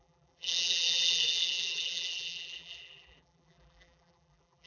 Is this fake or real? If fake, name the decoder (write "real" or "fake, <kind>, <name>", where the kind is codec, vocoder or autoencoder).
fake, vocoder, BigVGAN v2